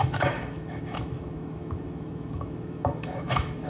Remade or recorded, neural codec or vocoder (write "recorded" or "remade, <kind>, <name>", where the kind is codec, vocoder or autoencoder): remade, autoencoder, DAC-VAE